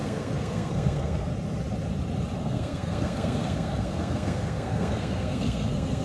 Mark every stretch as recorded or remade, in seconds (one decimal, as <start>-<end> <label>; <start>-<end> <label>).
0.0-1.3 remade; 1.3-2.4 recorded; 2.4-6.0 remade

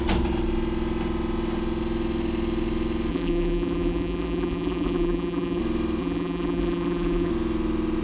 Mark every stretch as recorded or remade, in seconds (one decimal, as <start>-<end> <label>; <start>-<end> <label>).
0.0-3.1 recorded; 3.1-5.6 remade; 5.6-6.0 recorded; 6.0-7.3 remade; 7.3-8.0 recorded

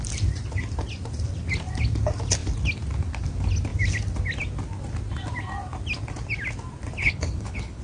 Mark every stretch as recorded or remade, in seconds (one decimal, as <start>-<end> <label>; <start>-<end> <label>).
0.0-7.0 recorded; 7.0-7.8 remade

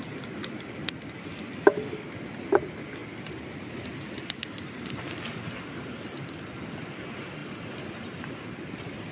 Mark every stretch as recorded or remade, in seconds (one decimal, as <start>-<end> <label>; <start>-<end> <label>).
0.0-9.1 recorded

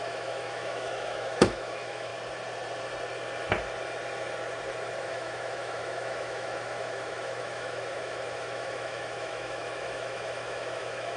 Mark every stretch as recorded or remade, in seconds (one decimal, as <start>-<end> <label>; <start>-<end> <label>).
0.0-2.1 remade; 2.1-5.0 recorded; 5.0-11.2 remade

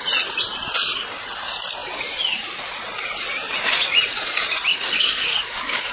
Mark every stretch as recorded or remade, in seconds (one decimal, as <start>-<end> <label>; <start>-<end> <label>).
0.0-4.7 recorded; 4.7-5.9 remade

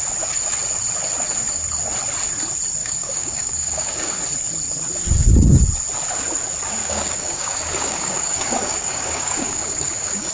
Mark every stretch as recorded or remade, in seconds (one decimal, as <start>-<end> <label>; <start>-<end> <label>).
0.0-2.8 recorded; 2.8-4.2 remade; 4.2-6.8 recorded; 6.8-10.3 remade